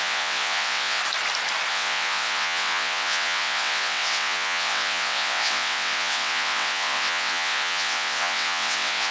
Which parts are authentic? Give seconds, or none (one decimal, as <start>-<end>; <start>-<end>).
1.0-1.7